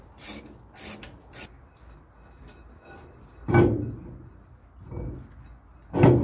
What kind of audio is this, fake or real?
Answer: real